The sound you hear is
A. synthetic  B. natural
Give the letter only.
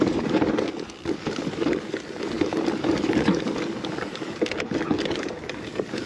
A